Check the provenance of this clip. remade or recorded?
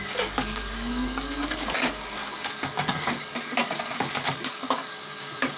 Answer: remade